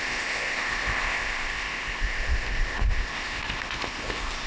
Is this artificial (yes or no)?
yes